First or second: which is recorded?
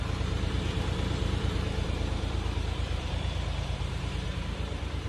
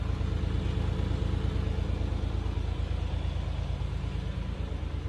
second